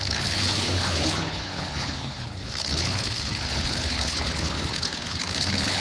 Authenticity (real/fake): fake